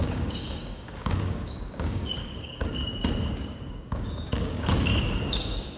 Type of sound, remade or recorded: remade